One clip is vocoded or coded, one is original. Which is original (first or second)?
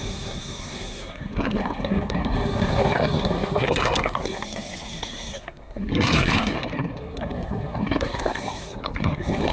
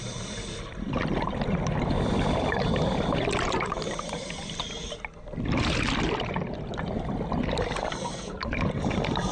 second